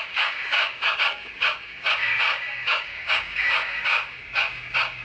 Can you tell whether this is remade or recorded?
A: remade